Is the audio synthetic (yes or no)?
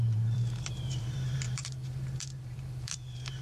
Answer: yes